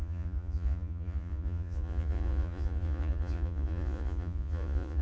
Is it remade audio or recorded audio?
remade